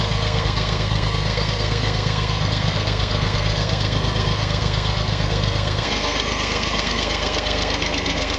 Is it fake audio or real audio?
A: fake